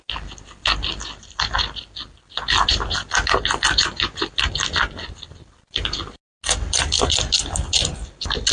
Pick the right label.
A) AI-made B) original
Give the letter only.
B